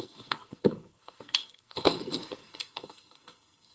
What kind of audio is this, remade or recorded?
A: remade